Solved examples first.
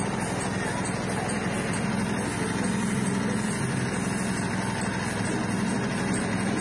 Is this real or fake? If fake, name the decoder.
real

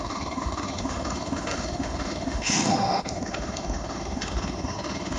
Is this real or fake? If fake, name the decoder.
fake, autoencoder, DAC-VAE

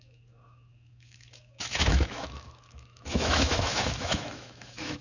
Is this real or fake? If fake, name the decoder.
fake, autoencoder, DAC-VAE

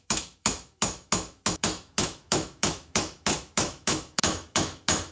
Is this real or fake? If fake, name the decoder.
fake, autoencoder, DAC-VAE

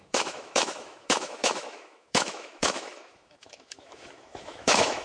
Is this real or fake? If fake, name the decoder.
fake, autoencoder, DAC-VAE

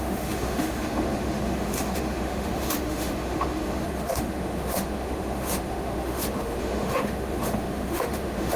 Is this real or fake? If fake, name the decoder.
fake, autoencoder, DAC-VAE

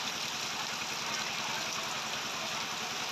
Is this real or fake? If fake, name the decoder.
real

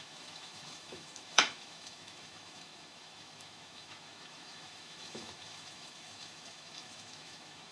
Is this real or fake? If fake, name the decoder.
fake, autoencoder, DAC-VAE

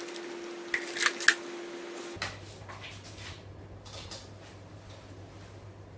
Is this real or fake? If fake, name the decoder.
real